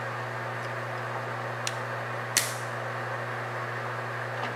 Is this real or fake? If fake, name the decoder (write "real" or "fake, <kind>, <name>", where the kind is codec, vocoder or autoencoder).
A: real